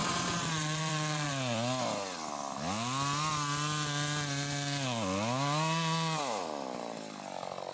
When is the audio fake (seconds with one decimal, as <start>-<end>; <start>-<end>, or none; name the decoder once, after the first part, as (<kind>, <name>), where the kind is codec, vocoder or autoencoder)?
0.0-1.3 (vocoder, WaveNeXt)